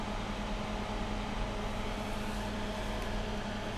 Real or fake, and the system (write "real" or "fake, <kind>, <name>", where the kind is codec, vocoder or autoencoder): real